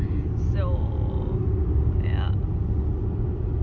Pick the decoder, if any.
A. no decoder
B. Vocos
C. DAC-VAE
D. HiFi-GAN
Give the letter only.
A